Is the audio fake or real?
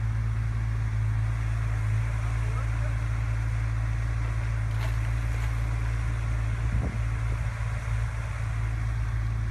real